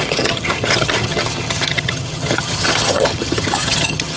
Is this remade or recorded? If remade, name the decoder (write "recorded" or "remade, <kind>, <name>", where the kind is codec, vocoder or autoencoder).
remade, vocoder, HiFi-GAN